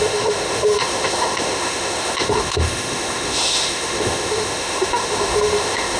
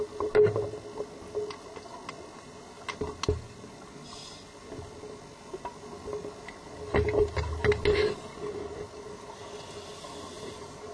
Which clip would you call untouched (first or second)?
second